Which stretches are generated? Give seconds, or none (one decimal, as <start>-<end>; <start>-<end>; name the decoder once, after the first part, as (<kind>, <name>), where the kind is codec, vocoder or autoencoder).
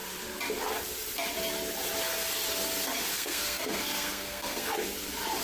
3.1-4.7 (codec, SNAC)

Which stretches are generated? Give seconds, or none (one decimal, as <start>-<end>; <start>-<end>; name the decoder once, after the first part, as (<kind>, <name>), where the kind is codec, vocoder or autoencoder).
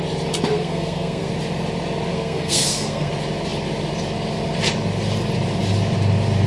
0.5-1.3 (codec, SNAC); 2.1-3.1